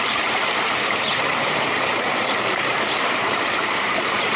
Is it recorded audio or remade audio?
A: remade